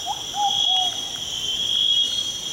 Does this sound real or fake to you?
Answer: real